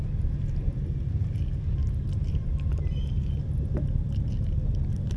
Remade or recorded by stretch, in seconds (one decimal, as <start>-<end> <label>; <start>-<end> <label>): 0.0-5.2 recorded